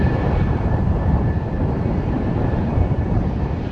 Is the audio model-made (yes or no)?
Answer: yes